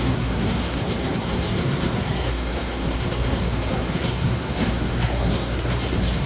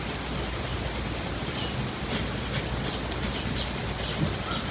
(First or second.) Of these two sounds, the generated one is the first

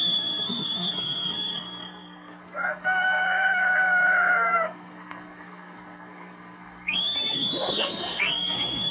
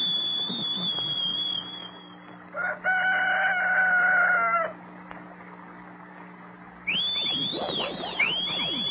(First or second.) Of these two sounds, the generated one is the first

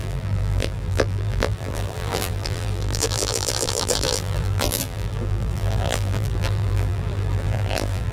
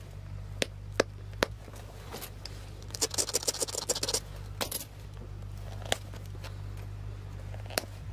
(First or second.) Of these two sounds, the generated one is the first